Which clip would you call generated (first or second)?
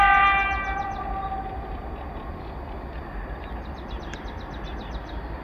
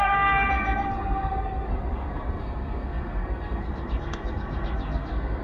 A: second